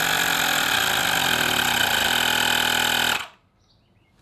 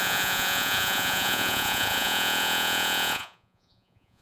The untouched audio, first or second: first